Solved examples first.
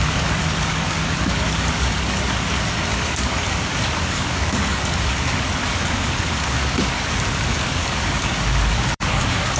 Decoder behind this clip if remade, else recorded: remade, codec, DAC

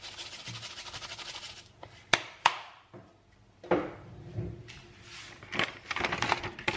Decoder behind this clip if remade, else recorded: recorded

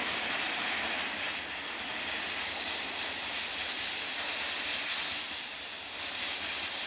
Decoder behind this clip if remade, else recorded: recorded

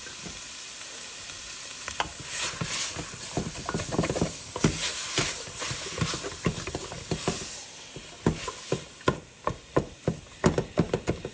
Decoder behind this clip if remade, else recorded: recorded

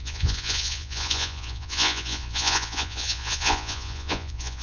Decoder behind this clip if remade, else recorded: remade, vocoder, Vocos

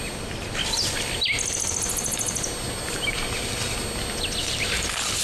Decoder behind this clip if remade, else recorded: recorded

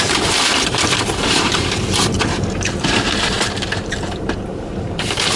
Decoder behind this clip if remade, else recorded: remade, vocoder, BigVGAN v2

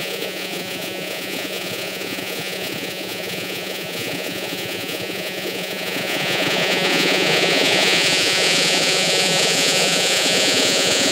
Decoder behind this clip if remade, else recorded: remade, vocoder, Vocos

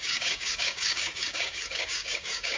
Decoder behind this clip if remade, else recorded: remade, codec, DAC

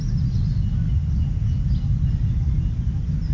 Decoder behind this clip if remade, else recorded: recorded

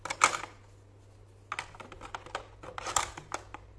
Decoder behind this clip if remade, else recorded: recorded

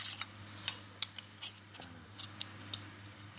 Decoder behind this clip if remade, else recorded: recorded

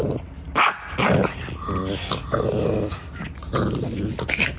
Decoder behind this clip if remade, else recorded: recorded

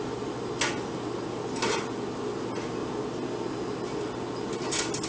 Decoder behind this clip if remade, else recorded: recorded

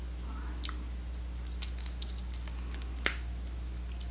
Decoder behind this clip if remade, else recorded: recorded